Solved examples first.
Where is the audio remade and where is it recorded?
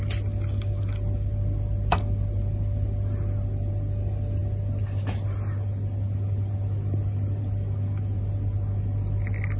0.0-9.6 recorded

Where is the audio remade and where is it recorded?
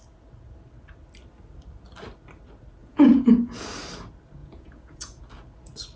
0.0-2.8 recorded; 2.8-3.5 remade; 3.5-4.4 recorded; 4.4-5.2 remade; 5.2-6.0 recorded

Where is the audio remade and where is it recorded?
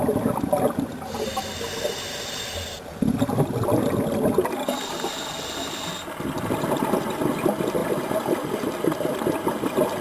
0.0-10.0 recorded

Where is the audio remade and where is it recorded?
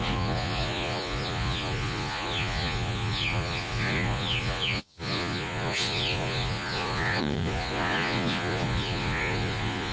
0.0-9.9 remade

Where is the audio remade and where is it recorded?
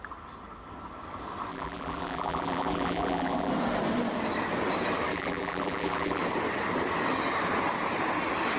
0.0-1.5 recorded; 1.5-3.5 remade; 3.5-5.1 recorded; 5.1-6.2 remade; 6.2-8.6 recorded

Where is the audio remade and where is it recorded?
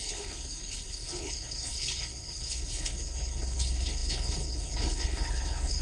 0.0-5.8 remade